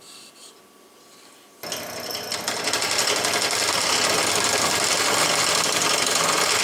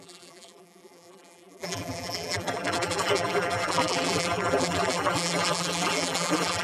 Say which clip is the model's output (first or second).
second